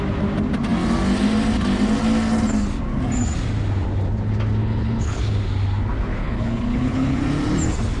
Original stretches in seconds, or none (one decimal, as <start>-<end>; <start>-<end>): 0.0-4.6; 5.2-6.2; 7.2-8.0